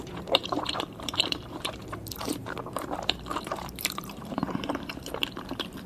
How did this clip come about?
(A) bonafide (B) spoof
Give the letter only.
B